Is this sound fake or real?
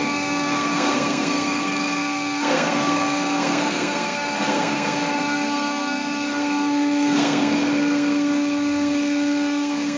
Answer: fake